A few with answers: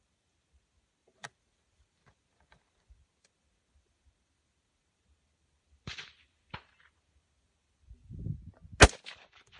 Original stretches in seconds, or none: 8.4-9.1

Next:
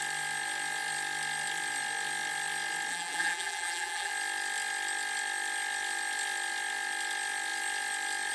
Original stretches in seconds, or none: 0.0-2.9; 4.1-8.3

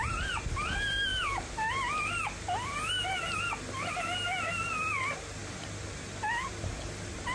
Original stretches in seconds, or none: 0.0-7.3

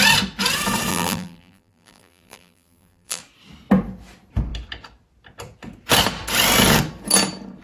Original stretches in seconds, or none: 0.0-0.9; 3.2-7.6

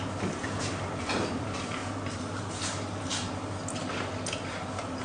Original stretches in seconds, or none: 1.8-5.0

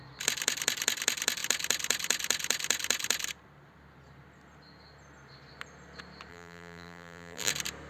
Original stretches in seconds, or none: 0.0-6.3; 7.5-7.9

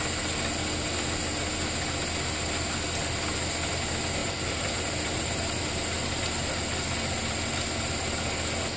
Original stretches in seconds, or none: 0.0-4.2; 5.3-8.8

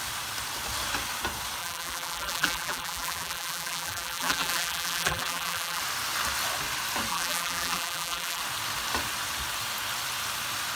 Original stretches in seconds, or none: 0.0-1.6; 5.8-7.1; 8.4-10.8